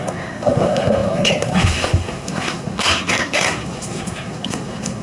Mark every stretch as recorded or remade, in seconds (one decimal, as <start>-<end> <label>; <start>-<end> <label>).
0.0-5.0 remade

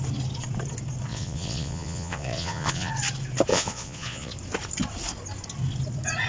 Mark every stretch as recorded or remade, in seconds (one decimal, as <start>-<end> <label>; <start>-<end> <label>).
0.0-1.1 recorded; 1.1-2.9 remade; 2.9-3.5 recorded; 3.5-4.3 remade; 4.3-6.3 recorded

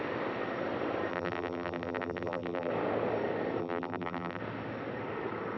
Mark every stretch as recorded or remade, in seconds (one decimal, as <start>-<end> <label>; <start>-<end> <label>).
0.0-1.1 recorded; 1.1-2.7 remade; 2.7-3.6 recorded; 3.6-4.4 remade; 4.4-5.6 recorded

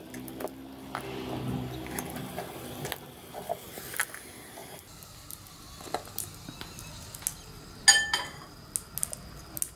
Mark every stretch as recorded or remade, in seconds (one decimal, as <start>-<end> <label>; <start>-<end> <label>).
0.0-9.8 recorded

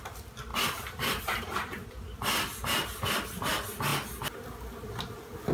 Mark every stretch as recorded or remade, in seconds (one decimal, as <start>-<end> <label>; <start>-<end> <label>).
0.0-0.5 recorded; 0.5-2.2 remade; 2.2-2.8 recorded; 2.8-3.5 remade; 3.5-5.5 recorded

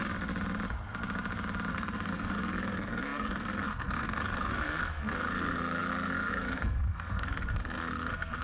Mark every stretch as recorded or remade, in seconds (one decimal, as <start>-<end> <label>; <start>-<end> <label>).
0.0-1.7 recorded; 1.7-8.4 remade

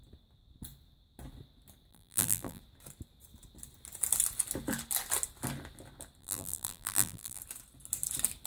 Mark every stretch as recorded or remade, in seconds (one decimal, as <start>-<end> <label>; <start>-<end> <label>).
0.0-1.9 recorded; 1.9-2.6 remade; 2.6-6.2 recorded; 6.2-7.4 remade; 7.4-8.5 recorded

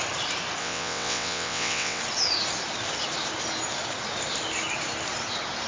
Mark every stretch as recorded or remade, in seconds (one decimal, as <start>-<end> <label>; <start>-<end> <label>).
0.0-0.6 recorded; 0.6-2.0 remade; 2.0-5.7 recorded